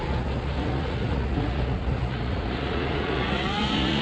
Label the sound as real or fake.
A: fake